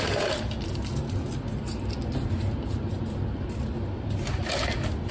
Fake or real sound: real